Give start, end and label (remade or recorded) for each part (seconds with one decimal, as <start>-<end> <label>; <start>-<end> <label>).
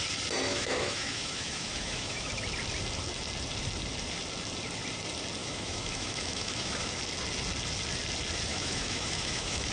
0.0-0.5 recorded; 0.5-2.3 remade; 2.3-5.4 recorded; 5.4-7.0 remade; 7.0-8.5 recorded; 8.5-9.7 remade